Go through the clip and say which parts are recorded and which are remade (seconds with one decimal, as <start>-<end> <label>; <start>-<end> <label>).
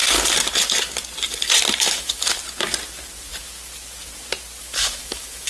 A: 0.0-1.8 recorded; 1.8-2.4 remade; 2.4-4.6 recorded; 4.6-5.5 remade